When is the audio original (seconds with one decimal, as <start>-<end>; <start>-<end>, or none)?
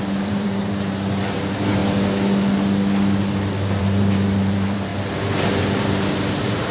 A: 1.8-3.8; 4.9-5.6